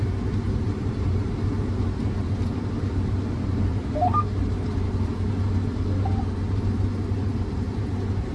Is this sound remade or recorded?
remade